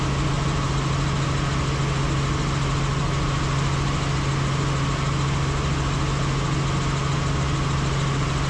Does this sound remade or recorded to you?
recorded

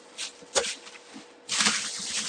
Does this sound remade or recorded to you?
recorded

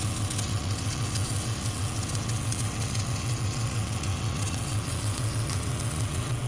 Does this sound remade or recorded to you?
remade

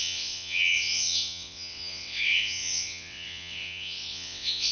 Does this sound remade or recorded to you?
remade